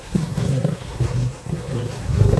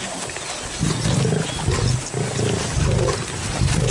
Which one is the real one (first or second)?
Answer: second